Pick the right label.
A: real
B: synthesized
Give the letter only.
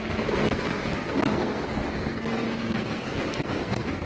B